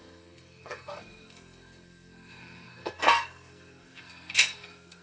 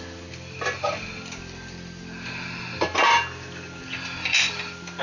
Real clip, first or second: second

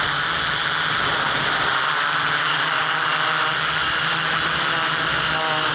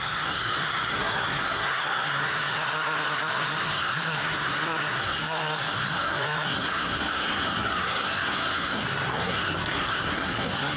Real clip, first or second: first